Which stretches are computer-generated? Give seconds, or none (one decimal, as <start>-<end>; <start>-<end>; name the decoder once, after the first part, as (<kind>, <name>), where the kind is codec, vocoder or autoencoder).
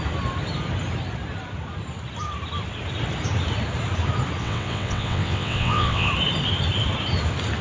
4.4-6.1 (vocoder, WaveNeXt)